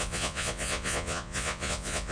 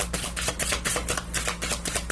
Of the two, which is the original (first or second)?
second